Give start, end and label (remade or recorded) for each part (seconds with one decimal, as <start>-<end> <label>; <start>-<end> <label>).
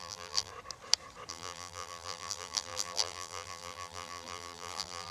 0.0-0.5 remade; 0.5-1.3 recorded; 1.3-5.1 remade